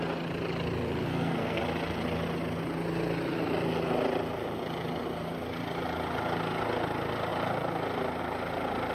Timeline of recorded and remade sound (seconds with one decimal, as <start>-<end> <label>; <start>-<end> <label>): 0.0-1.1 recorded; 1.1-1.6 remade; 1.6-8.9 recorded